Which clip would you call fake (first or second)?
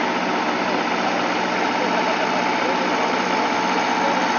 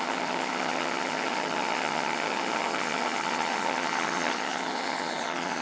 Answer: second